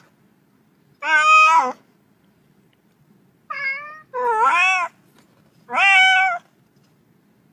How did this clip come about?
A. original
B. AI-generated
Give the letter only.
A